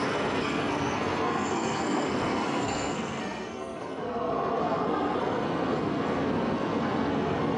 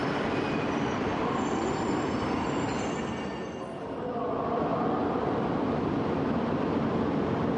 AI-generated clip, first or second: first